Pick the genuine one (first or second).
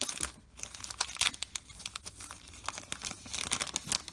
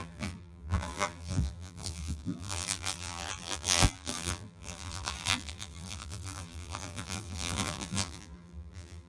first